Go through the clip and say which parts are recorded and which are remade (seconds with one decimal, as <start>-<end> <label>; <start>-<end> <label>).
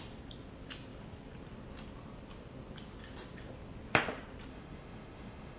0.0-4.5 recorded; 4.5-5.6 remade